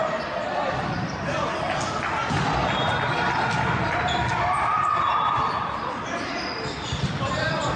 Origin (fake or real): fake